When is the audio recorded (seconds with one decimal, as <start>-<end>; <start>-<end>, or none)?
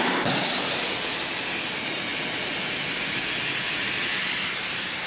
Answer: 0.0-5.1